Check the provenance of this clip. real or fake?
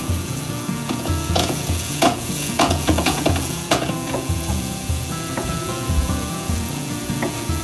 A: fake